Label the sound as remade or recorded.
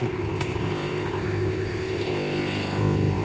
remade